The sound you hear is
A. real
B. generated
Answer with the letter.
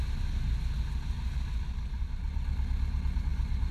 A